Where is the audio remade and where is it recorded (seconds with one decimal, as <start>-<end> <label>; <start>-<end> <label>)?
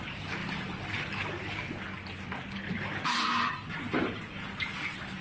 0.0-0.4 remade; 0.4-3.5 recorded; 3.5-5.2 remade